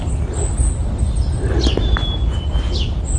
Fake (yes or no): no